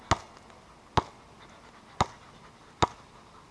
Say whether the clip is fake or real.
real